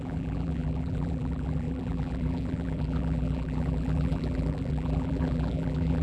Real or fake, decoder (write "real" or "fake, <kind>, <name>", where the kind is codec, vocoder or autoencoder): fake, vocoder, BigVGAN v2